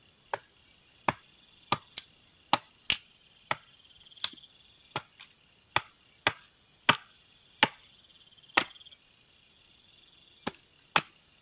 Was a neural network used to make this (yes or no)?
no